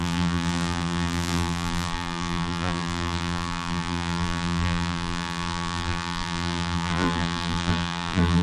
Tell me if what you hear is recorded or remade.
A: remade